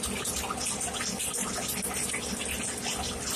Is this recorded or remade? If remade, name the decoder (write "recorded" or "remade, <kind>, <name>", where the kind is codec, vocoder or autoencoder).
recorded